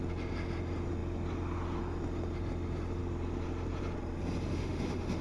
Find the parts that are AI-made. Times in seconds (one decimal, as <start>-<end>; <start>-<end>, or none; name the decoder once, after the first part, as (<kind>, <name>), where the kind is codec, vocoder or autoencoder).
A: 4.5-5.2 (autoencoder, DAC-VAE)